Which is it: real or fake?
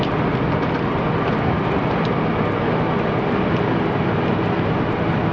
real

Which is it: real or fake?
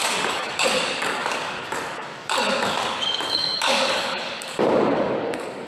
fake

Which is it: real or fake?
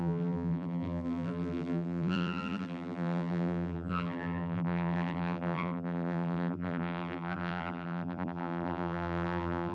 fake